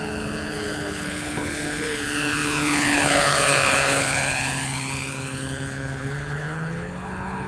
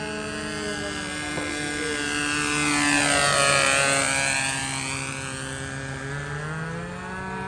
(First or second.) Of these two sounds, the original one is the second